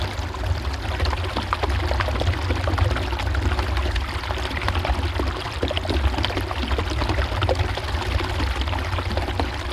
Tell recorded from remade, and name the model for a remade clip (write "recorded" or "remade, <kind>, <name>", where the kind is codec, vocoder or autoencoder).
recorded